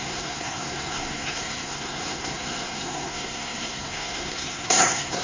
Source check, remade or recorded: remade